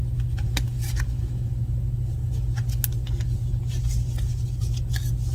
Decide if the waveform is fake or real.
real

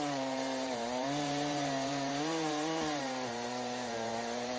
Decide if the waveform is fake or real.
fake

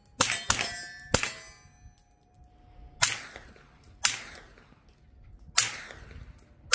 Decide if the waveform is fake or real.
real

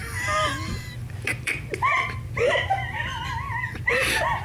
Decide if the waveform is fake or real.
fake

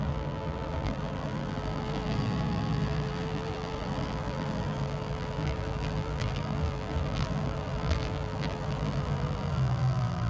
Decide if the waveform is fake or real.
fake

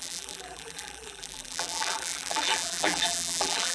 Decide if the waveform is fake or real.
fake